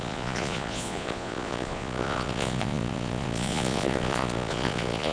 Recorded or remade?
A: remade